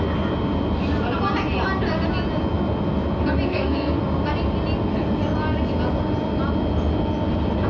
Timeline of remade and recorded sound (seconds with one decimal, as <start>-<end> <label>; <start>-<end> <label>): 0.0-3.5 recorded; 3.5-4.0 remade; 4.0-7.7 recorded